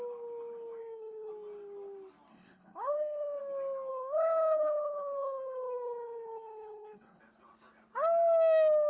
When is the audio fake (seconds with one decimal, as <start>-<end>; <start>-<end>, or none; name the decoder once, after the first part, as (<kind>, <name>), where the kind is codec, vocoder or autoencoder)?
0.8-1.3 (codec, HILCodec); 2.3-3.4; 3.9-7.2

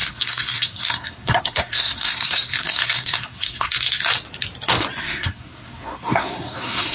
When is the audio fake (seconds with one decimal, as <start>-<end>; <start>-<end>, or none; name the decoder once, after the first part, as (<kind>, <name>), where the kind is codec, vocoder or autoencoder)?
0.0-4.1 (codec, SNAC); 5.0-6.9

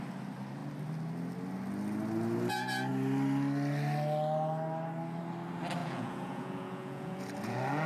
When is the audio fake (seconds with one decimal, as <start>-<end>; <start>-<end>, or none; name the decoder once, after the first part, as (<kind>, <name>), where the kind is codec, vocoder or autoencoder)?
5.8-7.2 (vocoder, Vocos)

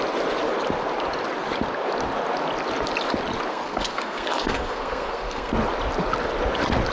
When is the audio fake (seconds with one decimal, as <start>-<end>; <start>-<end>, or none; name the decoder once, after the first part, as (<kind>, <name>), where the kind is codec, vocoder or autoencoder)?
3.5-5.5 (codec, SNAC)